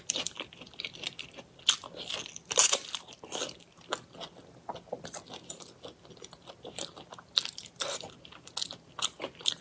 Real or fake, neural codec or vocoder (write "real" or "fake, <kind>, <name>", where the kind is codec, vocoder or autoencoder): real